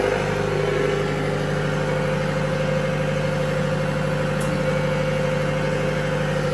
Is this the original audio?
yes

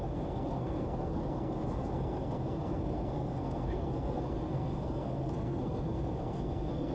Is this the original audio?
no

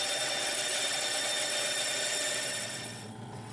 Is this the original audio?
no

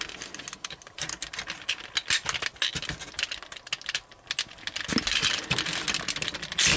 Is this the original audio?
yes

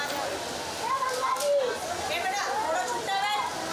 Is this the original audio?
yes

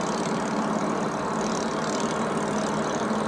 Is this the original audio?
yes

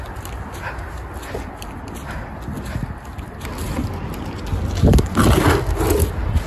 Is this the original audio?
yes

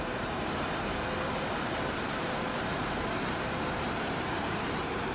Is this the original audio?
no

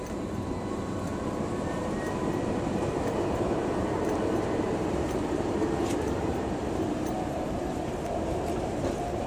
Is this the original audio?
no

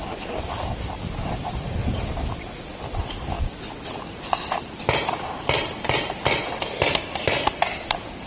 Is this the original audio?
yes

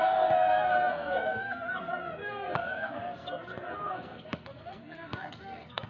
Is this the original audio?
no